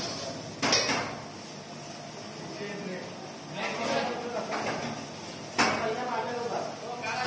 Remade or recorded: recorded